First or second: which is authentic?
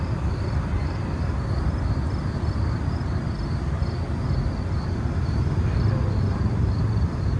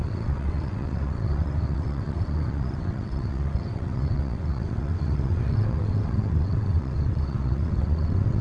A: first